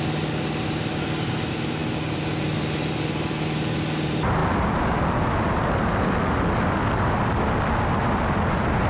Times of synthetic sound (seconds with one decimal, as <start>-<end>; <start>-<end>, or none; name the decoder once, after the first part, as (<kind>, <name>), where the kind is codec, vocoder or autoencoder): none